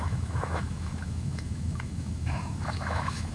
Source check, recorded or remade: remade